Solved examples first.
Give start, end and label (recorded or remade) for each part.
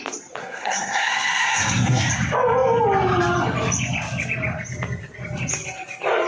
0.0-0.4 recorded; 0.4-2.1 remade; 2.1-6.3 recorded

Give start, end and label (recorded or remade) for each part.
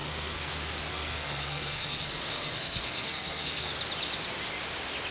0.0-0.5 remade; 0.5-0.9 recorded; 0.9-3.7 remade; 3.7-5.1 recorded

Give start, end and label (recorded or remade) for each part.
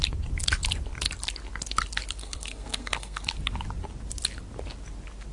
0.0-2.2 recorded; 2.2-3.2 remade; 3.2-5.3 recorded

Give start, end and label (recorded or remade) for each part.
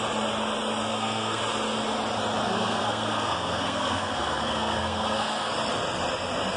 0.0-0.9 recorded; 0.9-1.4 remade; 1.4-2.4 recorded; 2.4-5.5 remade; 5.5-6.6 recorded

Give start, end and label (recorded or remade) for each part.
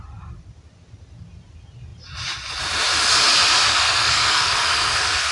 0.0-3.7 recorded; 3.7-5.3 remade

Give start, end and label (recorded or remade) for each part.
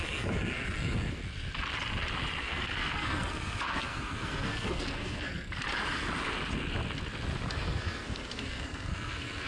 0.0-1.2 remade; 1.2-2.4 recorded; 2.4-5.6 remade; 5.6-7.5 recorded; 7.5-9.5 remade